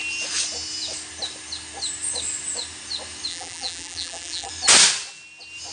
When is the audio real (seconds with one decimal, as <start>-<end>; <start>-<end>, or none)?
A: 0.0-3.3; 4.5-5.7